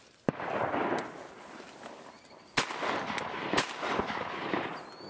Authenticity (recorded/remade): recorded